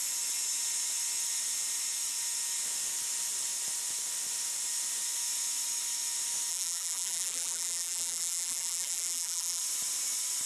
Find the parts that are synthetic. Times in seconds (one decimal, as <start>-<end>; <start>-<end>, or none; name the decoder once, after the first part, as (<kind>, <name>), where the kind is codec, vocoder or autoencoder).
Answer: 6.5-9.6 (vocoder, BigVGAN v2)

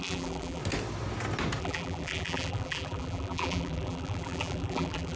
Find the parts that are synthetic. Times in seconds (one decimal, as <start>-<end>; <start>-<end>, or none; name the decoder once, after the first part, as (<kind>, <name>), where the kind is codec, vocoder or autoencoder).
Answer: 0.0-0.6 (vocoder, BigVGAN v2); 1.6-5.2

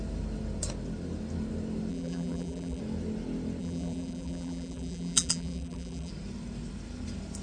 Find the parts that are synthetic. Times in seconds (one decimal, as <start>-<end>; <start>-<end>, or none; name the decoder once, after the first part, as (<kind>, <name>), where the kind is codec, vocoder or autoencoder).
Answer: 1.9-2.8 (vocoder, BigVGAN v2); 3.6-6.1

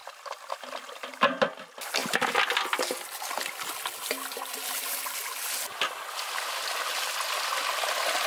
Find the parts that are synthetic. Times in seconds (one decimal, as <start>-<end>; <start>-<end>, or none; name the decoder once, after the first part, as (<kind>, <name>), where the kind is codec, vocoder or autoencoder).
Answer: none

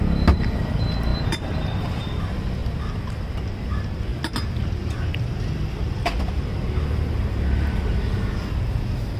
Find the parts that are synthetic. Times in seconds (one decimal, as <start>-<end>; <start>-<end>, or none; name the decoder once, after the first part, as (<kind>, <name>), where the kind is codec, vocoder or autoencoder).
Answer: 1.1-2.2 (vocoder, BigVGAN v2)

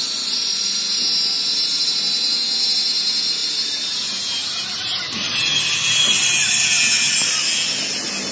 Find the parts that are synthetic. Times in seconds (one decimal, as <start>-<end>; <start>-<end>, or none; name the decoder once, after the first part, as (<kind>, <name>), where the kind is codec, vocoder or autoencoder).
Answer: none